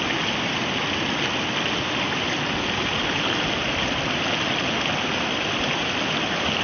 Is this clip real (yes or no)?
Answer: yes